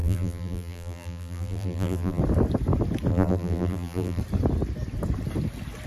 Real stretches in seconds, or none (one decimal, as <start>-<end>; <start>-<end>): 2.2-3.1; 4.2-5.9